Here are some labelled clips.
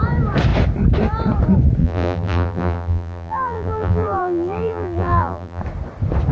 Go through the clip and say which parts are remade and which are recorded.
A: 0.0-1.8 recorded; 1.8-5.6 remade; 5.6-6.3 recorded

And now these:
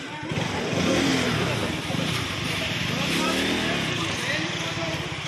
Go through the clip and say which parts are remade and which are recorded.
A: 0.0-5.3 recorded

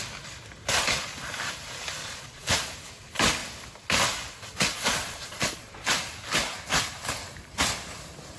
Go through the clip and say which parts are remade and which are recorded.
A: 0.0-2.0 recorded; 2.0-2.7 remade; 2.7-4.7 recorded; 4.7-5.8 remade; 5.8-8.4 recorded

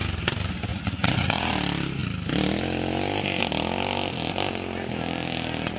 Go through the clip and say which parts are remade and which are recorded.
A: 0.0-0.7 recorded; 0.7-1.5 remade; 1.5-5.8 recorded

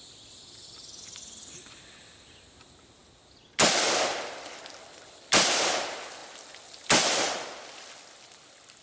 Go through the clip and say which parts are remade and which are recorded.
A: 0.0-8.8 recorded

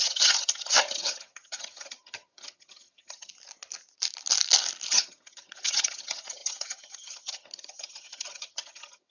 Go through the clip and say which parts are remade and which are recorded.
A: 0.0-3.3 remade; 3.3-4.9 recorded; 4.9-9.1 remade